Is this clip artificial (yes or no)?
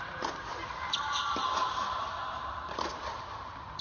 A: no